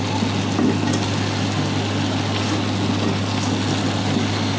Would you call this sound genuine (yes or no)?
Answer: yes